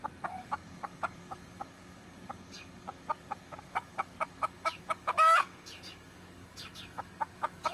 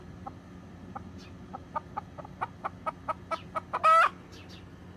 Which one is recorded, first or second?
second